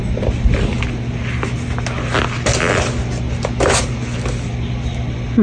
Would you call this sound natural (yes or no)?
yes